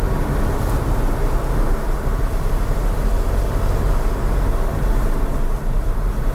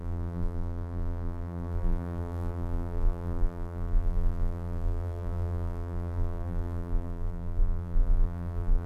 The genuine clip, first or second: first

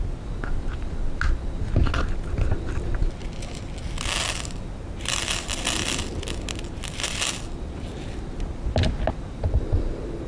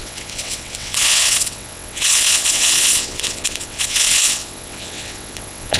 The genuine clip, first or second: first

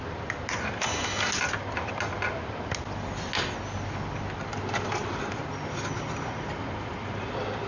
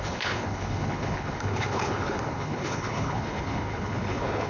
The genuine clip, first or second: first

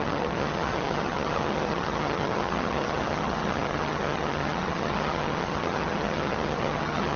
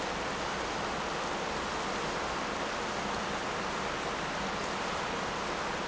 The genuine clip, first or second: second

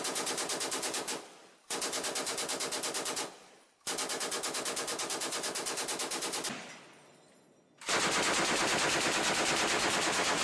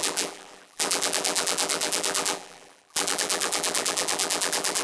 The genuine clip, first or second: first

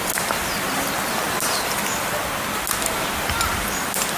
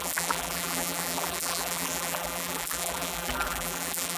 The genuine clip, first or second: first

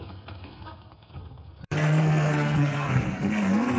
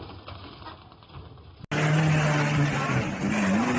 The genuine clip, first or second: second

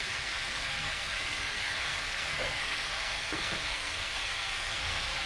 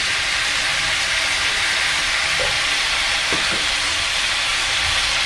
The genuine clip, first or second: second